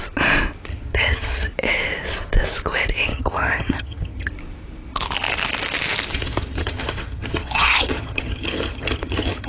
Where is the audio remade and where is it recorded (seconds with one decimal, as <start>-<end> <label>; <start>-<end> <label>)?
0.0-0.7 recorded; 0.7-1.5 remade; 1.5-3.1 recorded; 3.1-4.3 remade; 4.3-6.1 recorded; 6.1-9.5 remade